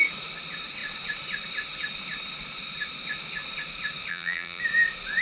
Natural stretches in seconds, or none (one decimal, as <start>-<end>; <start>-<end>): 0.0-4.1; 4.6-5.2